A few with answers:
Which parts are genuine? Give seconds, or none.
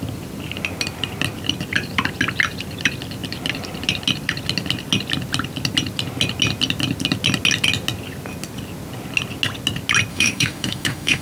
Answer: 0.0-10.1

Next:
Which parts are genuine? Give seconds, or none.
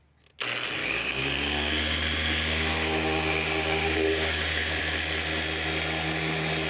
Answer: 0.0-0.8; 4.8-6.7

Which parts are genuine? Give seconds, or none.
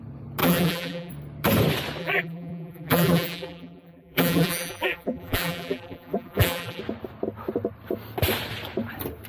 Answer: 0.0-0.4; 1.1-2.0; 6.8-9.3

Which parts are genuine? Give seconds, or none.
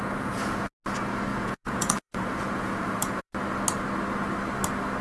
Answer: 0.7-1.3; 3.3-5.0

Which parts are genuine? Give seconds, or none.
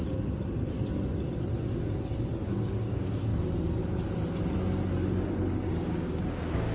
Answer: 0.0-1.6; 3.3-5.7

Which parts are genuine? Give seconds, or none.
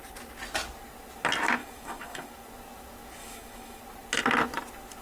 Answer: 0.0-1.6; 2.3-3.2; 3.8-5.0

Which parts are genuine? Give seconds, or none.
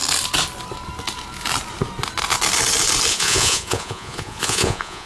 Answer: 0.0-3.1